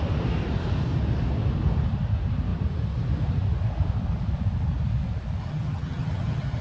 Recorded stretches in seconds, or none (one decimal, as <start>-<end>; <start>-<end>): 0.0-5.4